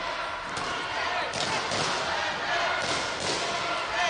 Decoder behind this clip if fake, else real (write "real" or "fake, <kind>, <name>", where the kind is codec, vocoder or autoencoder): real